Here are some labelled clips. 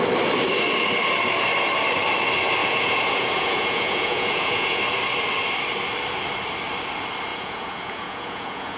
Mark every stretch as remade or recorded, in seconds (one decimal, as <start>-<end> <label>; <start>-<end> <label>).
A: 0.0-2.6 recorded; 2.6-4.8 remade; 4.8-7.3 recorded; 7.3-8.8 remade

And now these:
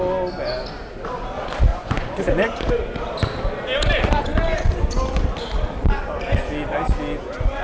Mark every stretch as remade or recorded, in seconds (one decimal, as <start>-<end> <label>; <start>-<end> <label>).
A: 0.0-1.7 recorded; 1.7-2.3 remade; 2.3-7.6 recorded

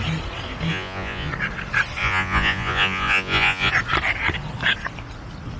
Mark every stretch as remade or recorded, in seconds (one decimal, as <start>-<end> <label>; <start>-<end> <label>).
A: 0.0-0.7 recorded; 0.7-1.3 remade; 1.3-2.0 recorded; 2.0-3.7 remade; 3.7-5.6 recorded

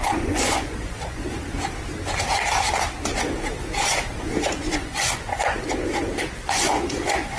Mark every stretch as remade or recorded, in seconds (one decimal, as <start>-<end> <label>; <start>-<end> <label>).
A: 0.0-1.4 remade; 1.4-3.9 recorded; 3.9-5.5 remade; 5.5-6.5 recorded; 6.5-7.4 remade

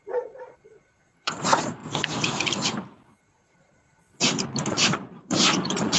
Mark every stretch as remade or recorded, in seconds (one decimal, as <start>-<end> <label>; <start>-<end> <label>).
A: 0.0-1.8 remade; 1.8-3.2 recorded; 3.2-4.0 remade; 4.0-4.7 recorded; 4.7-6.0 remade

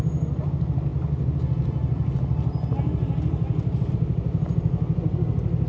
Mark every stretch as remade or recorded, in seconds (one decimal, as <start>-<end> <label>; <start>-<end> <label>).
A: 0.0-5.7 recorded

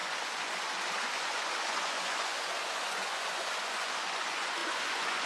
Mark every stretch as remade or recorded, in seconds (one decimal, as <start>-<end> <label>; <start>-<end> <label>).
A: 0.0-5.3 remade

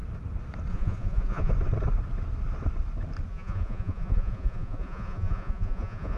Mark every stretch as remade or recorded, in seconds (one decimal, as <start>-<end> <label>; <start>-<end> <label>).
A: 0.0-0.7 recorded; 0.7-1.5 remade; 1.5-3.3 recorded; 3.3-6.2 remade